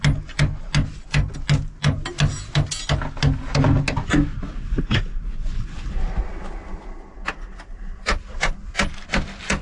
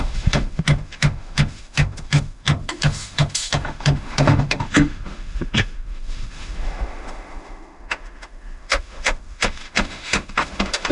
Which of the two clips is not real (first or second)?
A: second